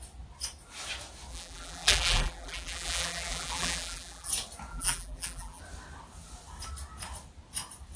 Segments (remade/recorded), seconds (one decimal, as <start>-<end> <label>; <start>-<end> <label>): 0.0-1.3 recorded; 1.3-4.3 remade; 4.3-4.7 recorded; 4.7-5.6 remade; 5.6-8.0 recorded